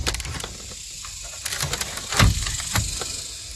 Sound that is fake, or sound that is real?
real